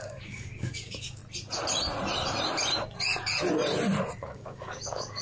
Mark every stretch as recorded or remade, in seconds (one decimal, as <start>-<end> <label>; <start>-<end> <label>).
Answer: 0.0-1.2 remade; 1.2-4.2 recorded; 4.2-5.2 remade